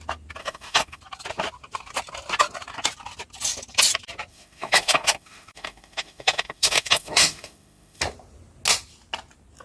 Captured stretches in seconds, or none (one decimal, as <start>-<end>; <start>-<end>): 0.0-0.4; 1.0-4.3; 8.0-9.6